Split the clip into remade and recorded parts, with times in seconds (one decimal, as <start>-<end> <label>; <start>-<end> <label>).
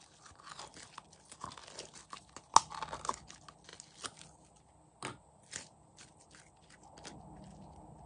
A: 0.0-8.1 recorded